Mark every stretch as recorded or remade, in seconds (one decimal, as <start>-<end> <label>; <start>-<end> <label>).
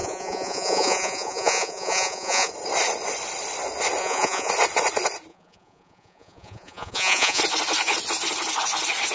0.0-2.5 remade; 2.5-4.0 recorded; 4.0-4.5 remade; 4.5-5.3 recorded; 5.3-7.4 remade; 7.4-9.1 recorded